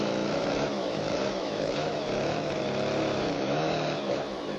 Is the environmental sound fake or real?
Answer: fake